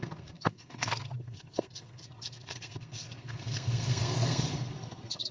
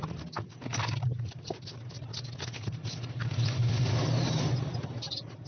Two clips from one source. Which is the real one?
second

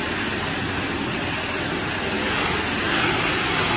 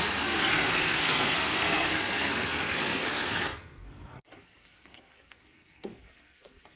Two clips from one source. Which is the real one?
first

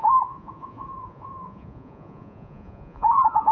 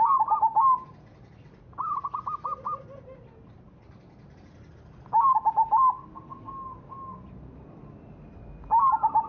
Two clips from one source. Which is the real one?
second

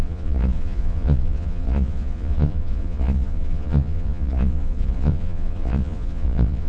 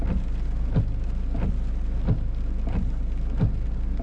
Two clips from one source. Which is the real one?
second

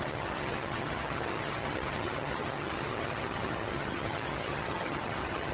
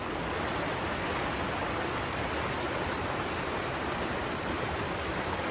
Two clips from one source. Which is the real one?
second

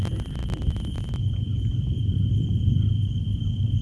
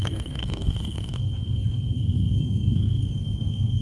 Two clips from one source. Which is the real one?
first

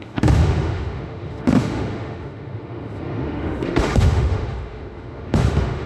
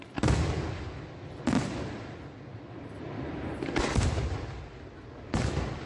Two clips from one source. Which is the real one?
second